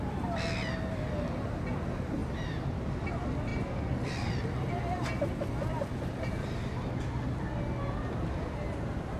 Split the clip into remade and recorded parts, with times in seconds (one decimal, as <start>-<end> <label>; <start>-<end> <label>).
0.0-2.2 recorded; 2.2-2.9 remade; 2.9-9.2 recorded